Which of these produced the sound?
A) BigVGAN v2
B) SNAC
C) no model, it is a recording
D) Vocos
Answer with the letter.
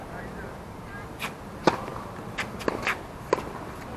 C